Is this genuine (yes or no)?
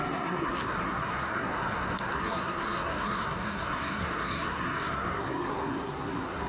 no